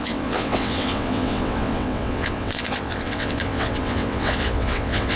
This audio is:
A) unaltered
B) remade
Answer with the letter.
B